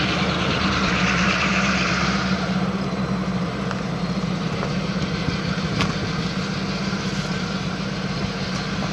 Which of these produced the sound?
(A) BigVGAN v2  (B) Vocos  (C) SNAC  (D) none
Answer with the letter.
A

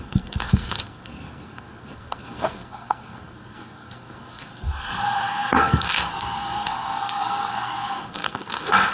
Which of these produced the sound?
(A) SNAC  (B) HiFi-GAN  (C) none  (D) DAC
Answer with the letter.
A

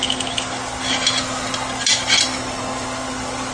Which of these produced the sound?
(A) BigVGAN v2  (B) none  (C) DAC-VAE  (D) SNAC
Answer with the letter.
B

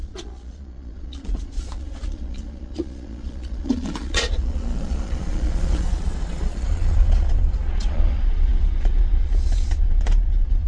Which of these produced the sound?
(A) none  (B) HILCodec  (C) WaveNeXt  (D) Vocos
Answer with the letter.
D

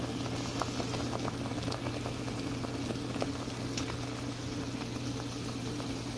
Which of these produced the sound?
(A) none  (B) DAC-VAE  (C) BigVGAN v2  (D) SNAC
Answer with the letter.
A